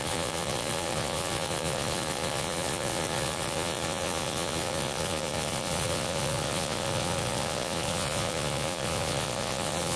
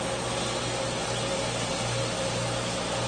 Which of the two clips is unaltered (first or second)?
second